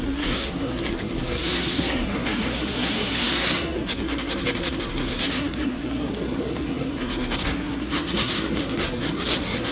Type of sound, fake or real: fake